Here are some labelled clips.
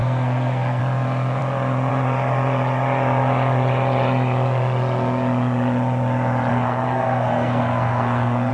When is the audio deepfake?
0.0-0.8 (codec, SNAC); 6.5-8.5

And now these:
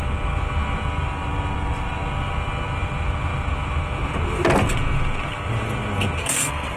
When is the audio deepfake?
6.2-6.8 (codec, SNAC)

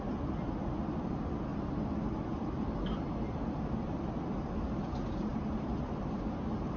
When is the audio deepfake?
none

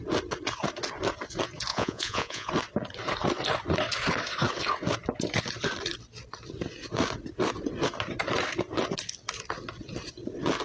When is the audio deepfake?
1.7-2.5 (vocoder, Vocos)